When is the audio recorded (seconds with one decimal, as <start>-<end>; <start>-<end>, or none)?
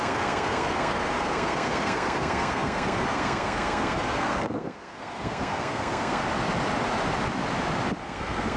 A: 6.2-8.0